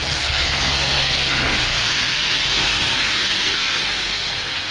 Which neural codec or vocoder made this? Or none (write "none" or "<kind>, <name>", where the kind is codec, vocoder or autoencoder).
codec, SNAC